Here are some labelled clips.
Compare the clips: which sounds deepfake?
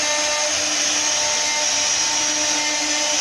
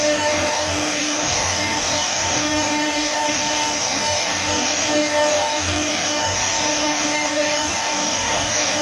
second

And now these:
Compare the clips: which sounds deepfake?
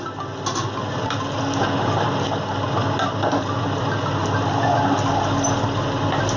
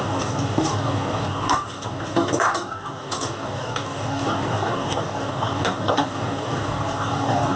second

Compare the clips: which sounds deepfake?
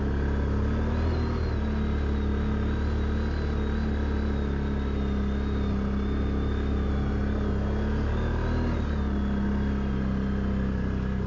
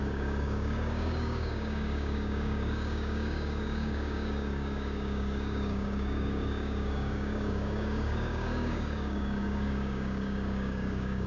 second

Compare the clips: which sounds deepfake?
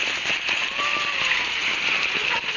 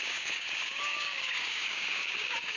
second